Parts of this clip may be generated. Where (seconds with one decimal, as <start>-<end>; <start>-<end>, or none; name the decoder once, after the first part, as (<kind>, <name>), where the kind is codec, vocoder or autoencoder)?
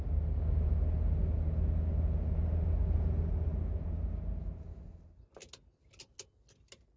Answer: none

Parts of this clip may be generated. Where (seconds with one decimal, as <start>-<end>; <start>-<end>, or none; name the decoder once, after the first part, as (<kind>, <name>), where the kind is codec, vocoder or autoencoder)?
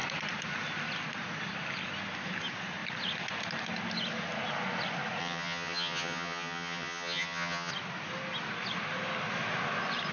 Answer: 5.2-7.7 (vocoder, HiFi-GAN)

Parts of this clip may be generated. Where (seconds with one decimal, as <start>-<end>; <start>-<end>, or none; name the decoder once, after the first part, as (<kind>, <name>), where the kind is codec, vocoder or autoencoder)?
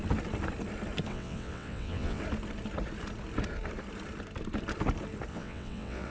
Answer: 1.1-2.2 (vocoder, WaveNeXt); 5.3-6.1